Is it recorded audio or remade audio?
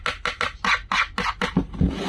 recorded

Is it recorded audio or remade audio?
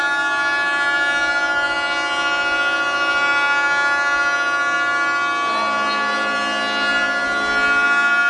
recorded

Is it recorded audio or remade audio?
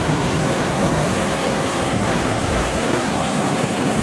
remade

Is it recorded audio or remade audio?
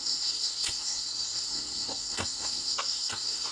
remade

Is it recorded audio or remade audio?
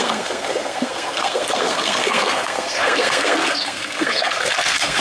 remade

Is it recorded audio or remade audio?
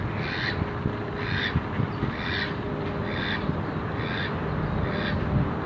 recorded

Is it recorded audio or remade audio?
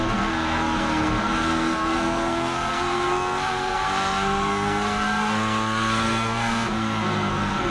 remade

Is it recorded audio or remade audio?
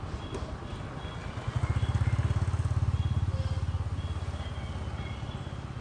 recorded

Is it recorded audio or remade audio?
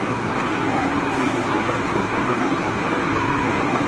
remade